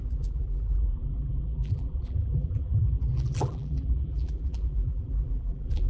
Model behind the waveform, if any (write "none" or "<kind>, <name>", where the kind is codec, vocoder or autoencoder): vocoder, BigVGAN v2